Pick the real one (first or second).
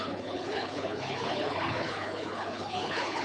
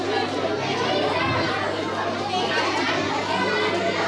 second